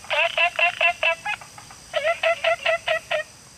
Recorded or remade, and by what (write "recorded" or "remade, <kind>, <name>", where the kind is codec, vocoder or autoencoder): recorded